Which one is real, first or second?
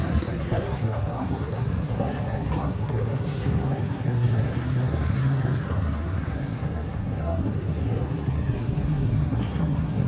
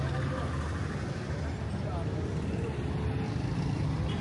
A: second